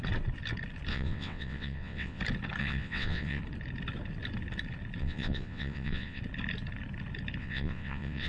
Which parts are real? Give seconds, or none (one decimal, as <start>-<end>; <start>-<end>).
0.0-0.9; 2.2-2.6; 3.4-5.0; 6.2-7.4